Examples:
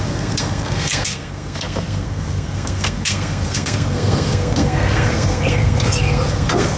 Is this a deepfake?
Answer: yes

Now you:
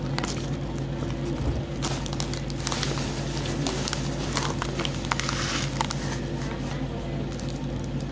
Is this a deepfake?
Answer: no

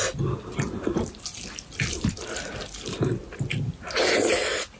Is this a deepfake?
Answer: no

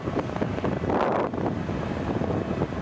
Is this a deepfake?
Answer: no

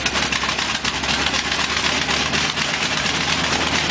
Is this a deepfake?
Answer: no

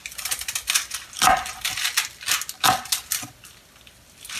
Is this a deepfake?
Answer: no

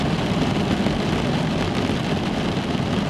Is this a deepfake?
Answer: no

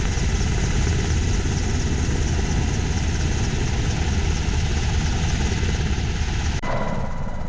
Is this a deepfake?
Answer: no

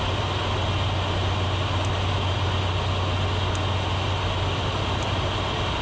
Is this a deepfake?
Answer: no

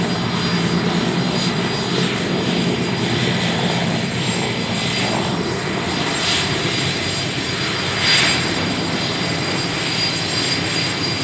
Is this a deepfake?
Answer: no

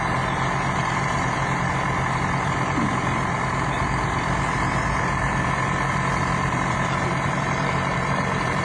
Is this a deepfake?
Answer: yes